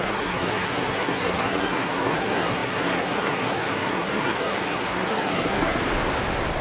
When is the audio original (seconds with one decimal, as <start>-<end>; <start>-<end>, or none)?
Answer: 5.8-6.6